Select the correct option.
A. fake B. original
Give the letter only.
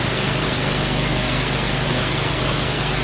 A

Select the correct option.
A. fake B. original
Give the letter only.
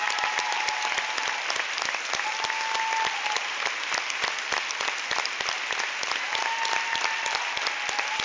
B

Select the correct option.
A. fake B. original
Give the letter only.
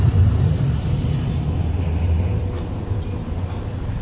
B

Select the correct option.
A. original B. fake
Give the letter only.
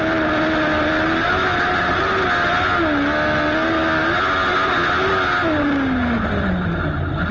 A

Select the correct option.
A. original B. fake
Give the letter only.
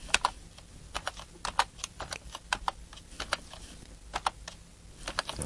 A